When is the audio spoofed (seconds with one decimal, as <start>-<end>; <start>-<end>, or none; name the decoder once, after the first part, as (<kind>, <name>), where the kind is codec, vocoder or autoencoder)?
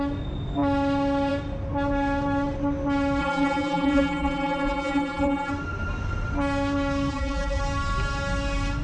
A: 3.2-5.5 (vocoder, BigVGAN v2); 7.1-7.6